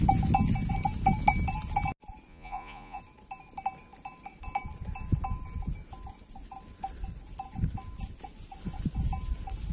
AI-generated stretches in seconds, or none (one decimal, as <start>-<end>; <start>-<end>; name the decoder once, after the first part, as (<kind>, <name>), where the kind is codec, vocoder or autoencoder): 2.3-3.0 (vocoder, Vocos)